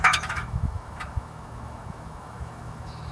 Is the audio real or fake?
fake